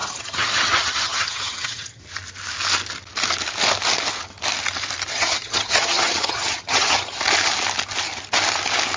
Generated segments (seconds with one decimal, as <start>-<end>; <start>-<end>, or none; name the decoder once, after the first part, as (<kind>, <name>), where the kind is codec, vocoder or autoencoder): 0.0-2.0 (vocoder, HiFi-GAN); 5.1-7.2